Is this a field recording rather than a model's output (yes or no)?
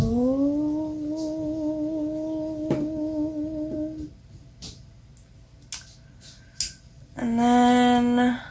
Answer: yes